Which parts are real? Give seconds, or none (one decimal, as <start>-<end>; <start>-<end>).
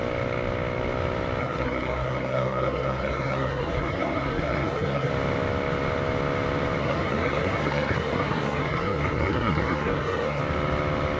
0.0-1.4; 5.1-6.8; 10.4-11.2